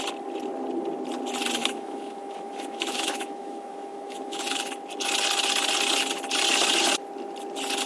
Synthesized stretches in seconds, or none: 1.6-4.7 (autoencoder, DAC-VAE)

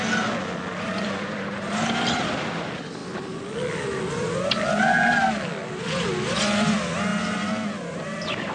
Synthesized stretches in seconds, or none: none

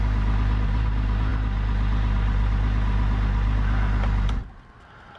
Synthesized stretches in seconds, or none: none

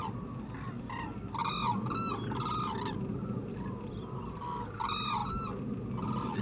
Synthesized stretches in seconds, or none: none